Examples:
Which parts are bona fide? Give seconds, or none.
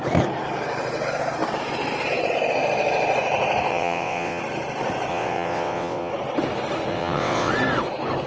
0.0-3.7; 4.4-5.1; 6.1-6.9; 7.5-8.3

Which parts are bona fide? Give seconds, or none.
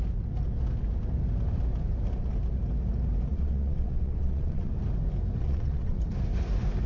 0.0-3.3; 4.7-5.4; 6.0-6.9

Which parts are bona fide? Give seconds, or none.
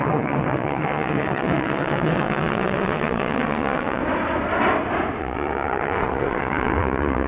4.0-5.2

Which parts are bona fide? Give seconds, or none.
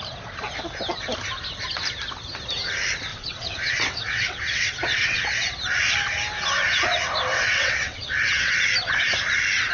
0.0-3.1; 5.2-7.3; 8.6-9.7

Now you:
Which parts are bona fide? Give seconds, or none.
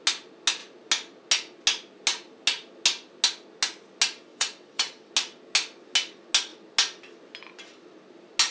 0.0-4.3; 5.1-8.5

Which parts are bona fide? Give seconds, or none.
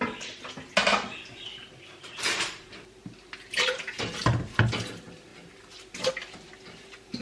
0.0-7.2